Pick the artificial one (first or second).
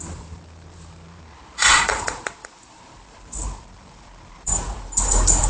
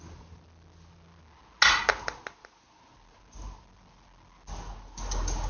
first